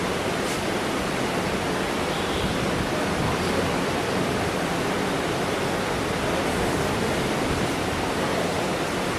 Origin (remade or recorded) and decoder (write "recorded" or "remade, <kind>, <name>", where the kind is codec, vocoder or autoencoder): remade, vocoder, BigVGAN v2